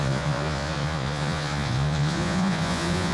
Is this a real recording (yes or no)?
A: no